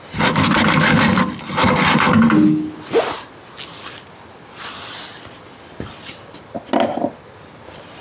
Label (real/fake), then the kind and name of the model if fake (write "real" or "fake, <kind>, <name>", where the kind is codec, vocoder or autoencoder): real